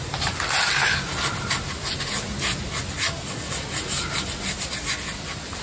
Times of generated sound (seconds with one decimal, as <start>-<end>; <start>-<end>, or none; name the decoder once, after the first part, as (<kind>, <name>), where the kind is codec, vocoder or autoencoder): none